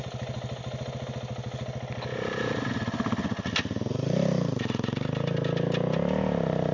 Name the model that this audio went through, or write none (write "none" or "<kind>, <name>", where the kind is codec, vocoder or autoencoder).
none